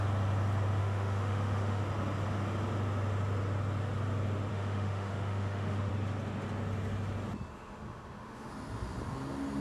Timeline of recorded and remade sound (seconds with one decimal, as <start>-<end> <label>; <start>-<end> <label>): 0.0-0.8 recorded; 0.8-1.8 remade; 1.8-4.5 recorded; 4.5-5.9 remade; 5.9-7.5 recorded; 7.5-8.5 remade; 8.5-9.6 recorded